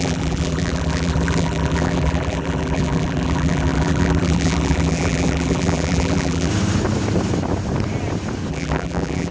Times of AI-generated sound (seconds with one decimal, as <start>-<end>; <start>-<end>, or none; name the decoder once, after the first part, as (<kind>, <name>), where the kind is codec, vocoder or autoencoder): 0.0-6.5 (vocoder, BigVGAN v2); 8.5-9.3